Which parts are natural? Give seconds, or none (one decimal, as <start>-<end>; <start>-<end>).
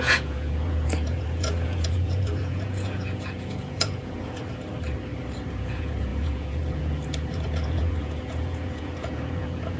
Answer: 4.4-5.5